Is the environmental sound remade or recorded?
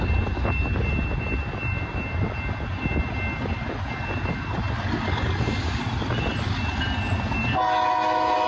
recorded